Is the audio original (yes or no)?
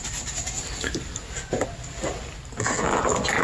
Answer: yes